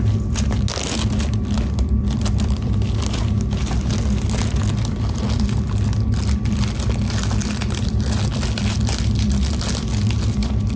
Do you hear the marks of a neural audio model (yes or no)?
no